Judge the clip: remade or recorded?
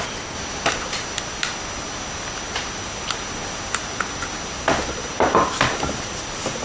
recorded